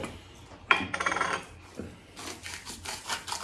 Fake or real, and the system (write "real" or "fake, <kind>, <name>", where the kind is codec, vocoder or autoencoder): real